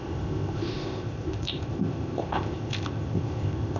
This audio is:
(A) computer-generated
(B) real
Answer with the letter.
A